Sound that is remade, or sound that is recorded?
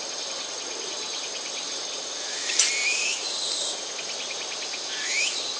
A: recorded